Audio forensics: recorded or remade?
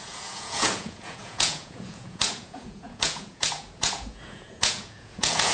remade